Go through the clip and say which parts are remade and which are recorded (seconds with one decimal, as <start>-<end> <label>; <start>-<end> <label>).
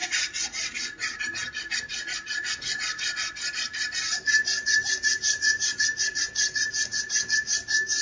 0.0-1.2 remade; 1.2-1.9 recorded; 1.9-3.3 remade; 3.3-8.0 recorded